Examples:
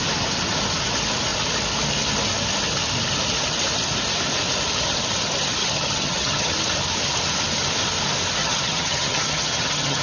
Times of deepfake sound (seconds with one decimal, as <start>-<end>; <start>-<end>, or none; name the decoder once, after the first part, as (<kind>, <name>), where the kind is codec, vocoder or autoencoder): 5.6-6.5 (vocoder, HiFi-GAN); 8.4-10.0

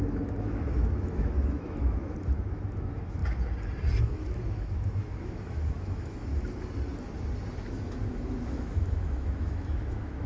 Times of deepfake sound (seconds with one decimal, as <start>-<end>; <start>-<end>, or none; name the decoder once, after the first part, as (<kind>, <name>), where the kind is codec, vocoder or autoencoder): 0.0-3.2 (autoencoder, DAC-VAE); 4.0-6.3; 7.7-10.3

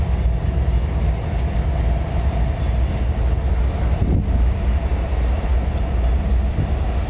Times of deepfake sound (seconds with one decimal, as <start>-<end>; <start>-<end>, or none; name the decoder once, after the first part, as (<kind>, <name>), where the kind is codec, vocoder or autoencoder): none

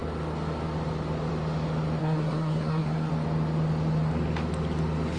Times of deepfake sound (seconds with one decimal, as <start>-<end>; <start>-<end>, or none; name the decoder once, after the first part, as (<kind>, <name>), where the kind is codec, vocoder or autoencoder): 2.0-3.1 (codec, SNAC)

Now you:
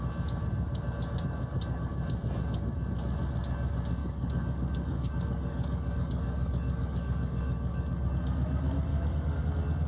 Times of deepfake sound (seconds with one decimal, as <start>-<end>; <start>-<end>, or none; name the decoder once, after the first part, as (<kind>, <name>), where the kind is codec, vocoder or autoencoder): 4.0-8.1 (codec, DAC); 8.9-9.4